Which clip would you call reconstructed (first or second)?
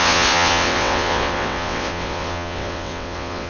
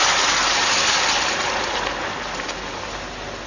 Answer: first